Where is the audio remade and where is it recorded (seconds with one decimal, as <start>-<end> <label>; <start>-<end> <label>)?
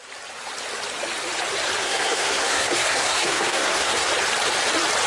0.0-1.8 recorded; 1.8-4.1 remade; 4.1-5.1 recorded